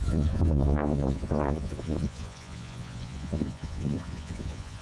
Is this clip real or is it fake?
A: fake